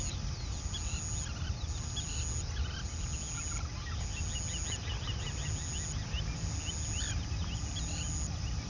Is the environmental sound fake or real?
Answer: real